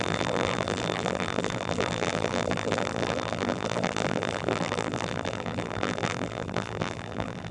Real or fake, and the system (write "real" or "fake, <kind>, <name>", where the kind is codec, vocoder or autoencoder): fake, vocoder, BigVGAN v2